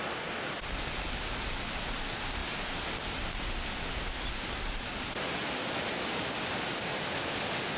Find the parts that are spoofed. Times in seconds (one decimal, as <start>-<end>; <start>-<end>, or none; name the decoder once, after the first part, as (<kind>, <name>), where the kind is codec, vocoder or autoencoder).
none